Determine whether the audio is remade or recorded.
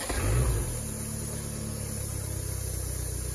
recorded